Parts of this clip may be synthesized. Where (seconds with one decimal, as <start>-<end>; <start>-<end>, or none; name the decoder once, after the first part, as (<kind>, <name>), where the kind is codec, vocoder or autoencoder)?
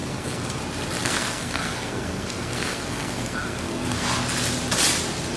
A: 0.0-0.6 (codec, SNAC); 1.0-4.1